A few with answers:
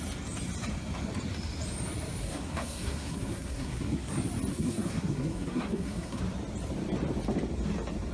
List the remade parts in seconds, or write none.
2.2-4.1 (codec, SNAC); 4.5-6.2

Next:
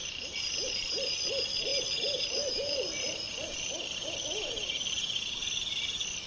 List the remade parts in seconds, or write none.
0.0-1.2 (vocoder, BigVGAN v2); 1.7-2.2; 3.0-5.8

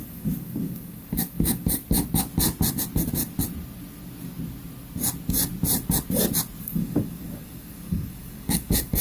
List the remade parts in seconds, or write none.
0.0-1.8 (codec, DAC); 6.6-9.0